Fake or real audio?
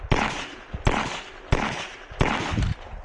real